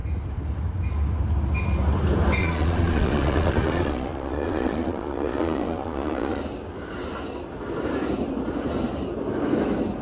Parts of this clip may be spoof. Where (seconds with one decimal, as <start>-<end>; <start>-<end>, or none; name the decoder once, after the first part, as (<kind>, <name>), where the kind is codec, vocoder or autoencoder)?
2.4-6.4 (vocoder, Vocos)